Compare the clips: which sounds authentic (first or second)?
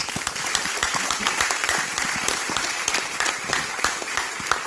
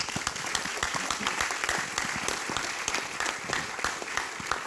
second